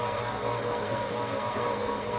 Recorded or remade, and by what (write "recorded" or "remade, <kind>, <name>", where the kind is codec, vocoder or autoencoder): remade, codec, SNAC